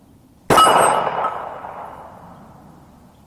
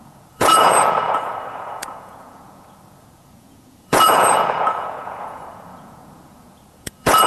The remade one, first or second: second